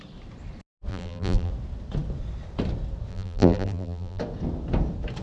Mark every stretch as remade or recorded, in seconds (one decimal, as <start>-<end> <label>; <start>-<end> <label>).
0.0-0.9 recorded; 0.9-1.5 remade; 1.5-3.1 recorded; 3.1-4.2 remade; 4.2-5.2 recorded